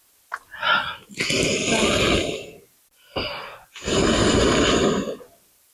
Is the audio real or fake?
real